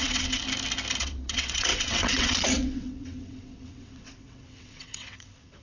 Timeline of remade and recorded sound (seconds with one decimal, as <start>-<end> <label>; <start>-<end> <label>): 0.0-0.4 remade; 0.4-1.0 recorded; 1.0-5.6 remade